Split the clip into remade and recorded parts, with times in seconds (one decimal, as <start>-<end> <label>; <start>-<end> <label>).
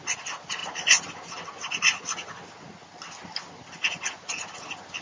0.0-5.0 recorded